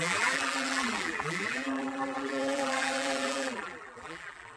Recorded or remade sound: remade